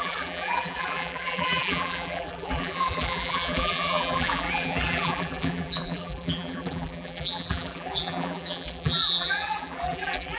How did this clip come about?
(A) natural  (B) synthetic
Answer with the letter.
B